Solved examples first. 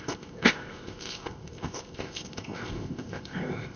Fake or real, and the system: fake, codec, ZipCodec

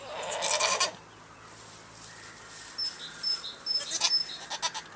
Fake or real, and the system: real